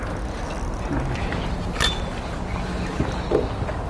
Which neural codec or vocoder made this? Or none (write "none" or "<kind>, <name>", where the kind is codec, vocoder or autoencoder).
none